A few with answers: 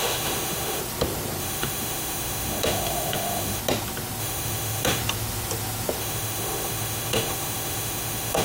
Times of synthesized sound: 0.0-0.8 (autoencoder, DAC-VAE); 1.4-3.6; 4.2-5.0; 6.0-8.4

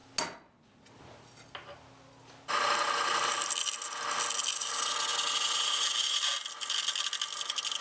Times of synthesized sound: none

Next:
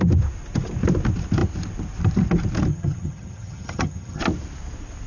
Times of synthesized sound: 2.7-4.2 (vocoder, HiFi-GAN)

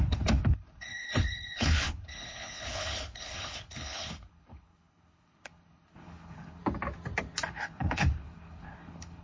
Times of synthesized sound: 0.0-6.6 (codec, HILCodec); 7.4-9.2